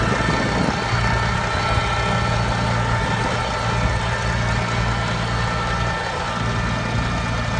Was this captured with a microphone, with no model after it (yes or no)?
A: yes